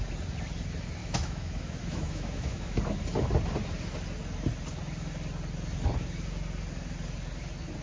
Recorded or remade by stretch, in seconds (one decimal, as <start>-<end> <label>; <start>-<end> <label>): 0.0-1.0 recorded; 1.0-2.8 remade; 2.8-7.8 recorded